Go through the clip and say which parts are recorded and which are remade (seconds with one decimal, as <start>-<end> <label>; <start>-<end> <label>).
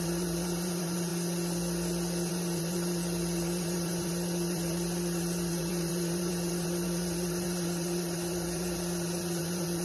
0.0-1.1 remade; 1.1-2.3 recorded; 2.3-9.8 remade